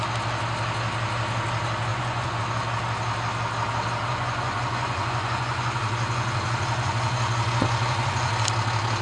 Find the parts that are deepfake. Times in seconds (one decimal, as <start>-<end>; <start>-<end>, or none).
1.9-2.4; 4.1-8.3